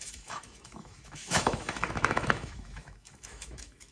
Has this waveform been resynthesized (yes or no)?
yes